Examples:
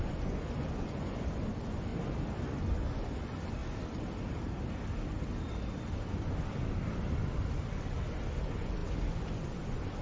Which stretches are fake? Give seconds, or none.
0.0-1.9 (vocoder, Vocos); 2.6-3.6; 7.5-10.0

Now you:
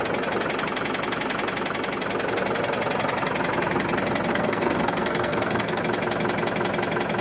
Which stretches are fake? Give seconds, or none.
4.3-5.8 (codec, SNAC)

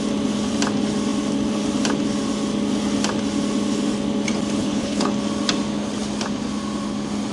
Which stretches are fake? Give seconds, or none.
4.6-5.1 (codec, HILCodec)